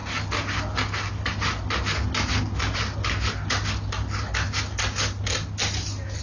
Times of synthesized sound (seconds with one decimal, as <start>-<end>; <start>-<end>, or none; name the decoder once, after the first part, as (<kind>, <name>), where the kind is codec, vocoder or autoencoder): none